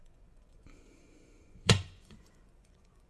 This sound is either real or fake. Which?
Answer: fake